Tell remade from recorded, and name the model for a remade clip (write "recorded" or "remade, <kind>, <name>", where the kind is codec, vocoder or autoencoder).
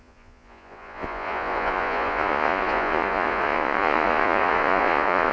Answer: remade, vocoder, Vocos